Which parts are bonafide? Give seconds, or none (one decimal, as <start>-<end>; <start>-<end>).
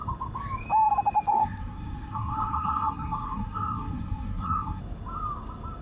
0.0-1.3; 4.8-5.8